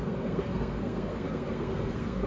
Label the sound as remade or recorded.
remade